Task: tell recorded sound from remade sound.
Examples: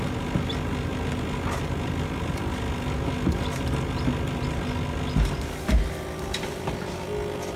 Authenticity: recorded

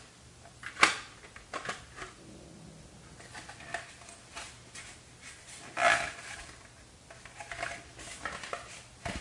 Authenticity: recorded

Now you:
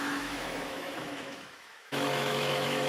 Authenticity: remade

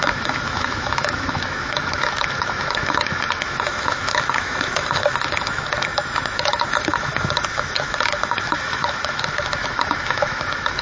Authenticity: remade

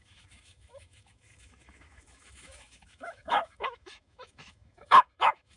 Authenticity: remade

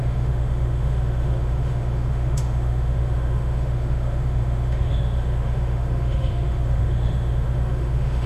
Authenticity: remade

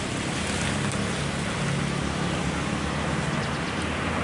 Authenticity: recorded